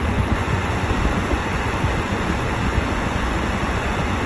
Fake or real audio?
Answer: fake